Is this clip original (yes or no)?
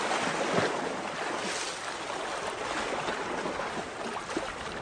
yes